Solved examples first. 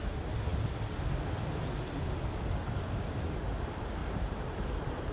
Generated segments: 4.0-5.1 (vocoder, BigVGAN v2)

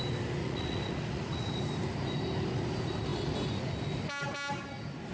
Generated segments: 0.4-1.5 (vocoder, Vocos)

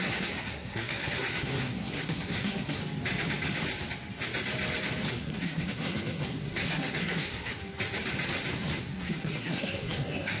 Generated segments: 0.0-2.8 (codec, SNAC); 5.1-7.5; 8.8-10.4

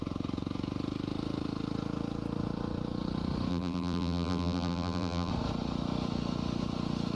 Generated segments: 3.5-5.3 (vocoder, BigVGAN v2)

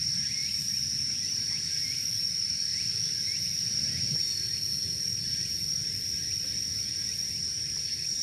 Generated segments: 0.0-2.7 (vocoder, BigVGAN v2); 7.1-8.2

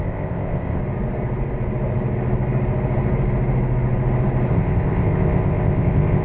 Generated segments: 0.0-0.8 (codec, ZipCodec); 4.5-6.2